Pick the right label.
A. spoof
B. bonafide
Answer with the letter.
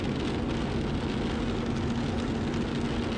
B